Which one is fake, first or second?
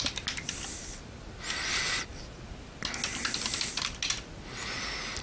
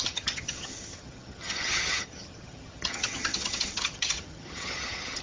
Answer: second